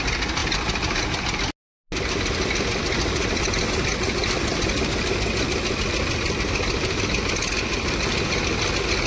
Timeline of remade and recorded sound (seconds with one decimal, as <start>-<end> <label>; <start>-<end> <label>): 0.0-9.1 recorded

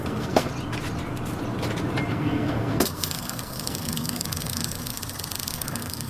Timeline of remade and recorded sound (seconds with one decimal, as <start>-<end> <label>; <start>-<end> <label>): 0.0-0.5 remade; 0.5-2.1 recorded; 2.1-5.0 remade; 5.0-5.5 recorded; 5.5-6.1 remade

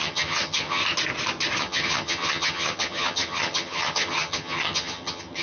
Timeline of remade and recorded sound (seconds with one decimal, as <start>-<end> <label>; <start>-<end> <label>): 0.0-0.8 remade; 0.8-1.6 recorded; 1.6-5.4 remade

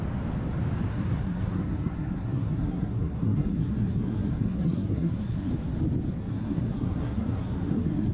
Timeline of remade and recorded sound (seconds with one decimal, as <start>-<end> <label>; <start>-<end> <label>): 0.0-0.9 recorded; 0.9-5.5 remade; 5.5-6.2 recorded; 6.2-8.1 remade